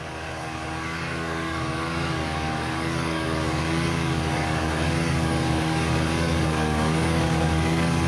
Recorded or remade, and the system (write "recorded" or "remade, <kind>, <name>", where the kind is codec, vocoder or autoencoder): remade, codec, DAC